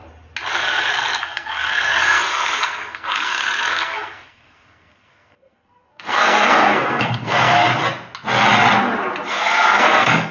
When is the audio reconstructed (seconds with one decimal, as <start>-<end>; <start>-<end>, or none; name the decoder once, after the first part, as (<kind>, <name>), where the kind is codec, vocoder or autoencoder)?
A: 0.5-7.7 (codec, SNAC); 9.3-10.3